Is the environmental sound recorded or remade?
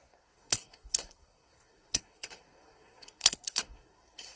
remade